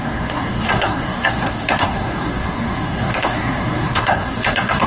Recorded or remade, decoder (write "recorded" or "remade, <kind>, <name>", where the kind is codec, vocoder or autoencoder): remade, codec, SNAC